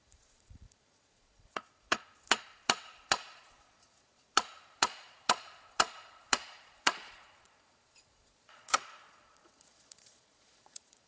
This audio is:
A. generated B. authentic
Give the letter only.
A